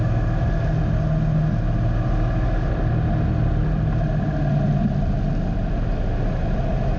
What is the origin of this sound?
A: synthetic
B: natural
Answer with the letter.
B